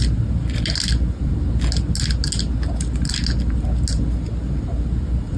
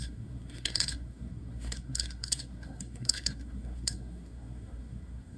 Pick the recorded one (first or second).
first